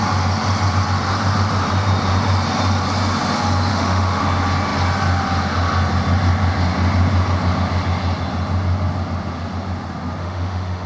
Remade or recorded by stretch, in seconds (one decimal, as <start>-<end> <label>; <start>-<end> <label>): 0.0-3.7 recorded; 3.7-4.2 remade; 4.2-10.2 recorded; 10.2-10.9 remade